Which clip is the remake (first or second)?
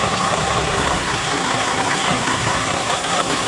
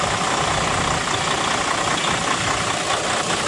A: first